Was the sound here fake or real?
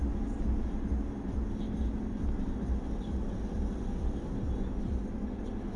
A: real